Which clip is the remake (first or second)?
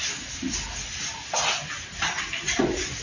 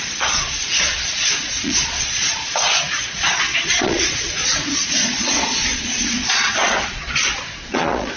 second